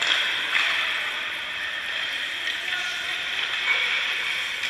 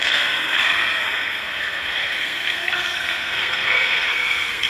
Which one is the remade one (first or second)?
second